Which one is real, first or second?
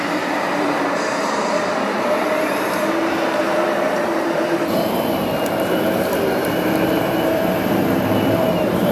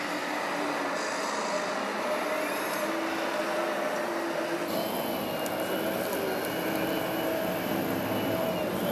second